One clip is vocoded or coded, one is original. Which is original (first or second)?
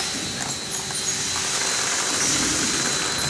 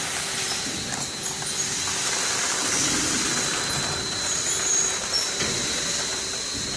first